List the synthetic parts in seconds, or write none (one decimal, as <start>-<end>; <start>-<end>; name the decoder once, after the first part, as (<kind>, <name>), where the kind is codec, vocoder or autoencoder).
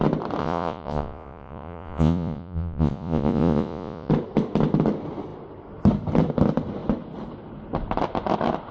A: 0.4-4.1 (vocoder, Vocos)